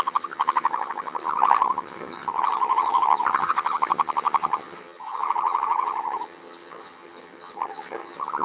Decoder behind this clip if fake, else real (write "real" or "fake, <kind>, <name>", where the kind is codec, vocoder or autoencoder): fake, vocoder, HiFi-GAN